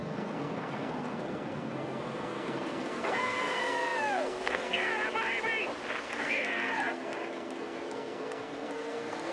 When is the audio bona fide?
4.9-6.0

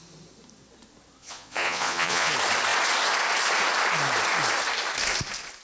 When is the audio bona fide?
0.0-1.2; 2.3-5.6

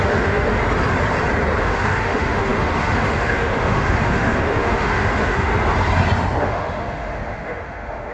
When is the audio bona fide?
0.6-1.6; 5.5-6.4